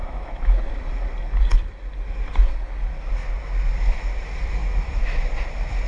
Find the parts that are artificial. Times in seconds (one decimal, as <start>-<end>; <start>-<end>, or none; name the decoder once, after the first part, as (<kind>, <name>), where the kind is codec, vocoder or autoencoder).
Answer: 0.0-0.6 (autoencoder, DAC-VAE); 4.6-5.3